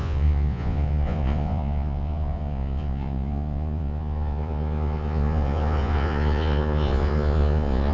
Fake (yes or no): yes